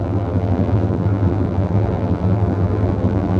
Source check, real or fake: fake